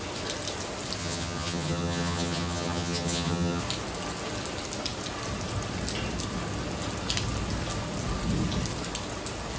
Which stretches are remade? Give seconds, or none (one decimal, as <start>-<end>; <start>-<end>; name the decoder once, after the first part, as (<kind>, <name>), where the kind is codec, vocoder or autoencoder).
1.0-3.6 (vocoder, HiFi-GAN)